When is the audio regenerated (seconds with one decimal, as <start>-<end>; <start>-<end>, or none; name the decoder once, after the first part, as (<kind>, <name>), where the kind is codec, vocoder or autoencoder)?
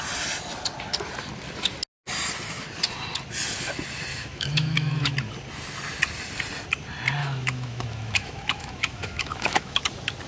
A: 4.1-5.1 (autoencoder, DAC-VAE); 7.2-9.8